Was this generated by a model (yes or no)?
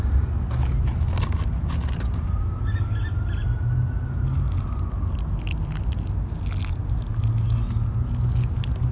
no